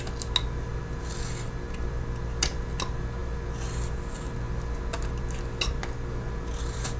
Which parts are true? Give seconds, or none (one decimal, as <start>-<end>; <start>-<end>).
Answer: 0.0-7.0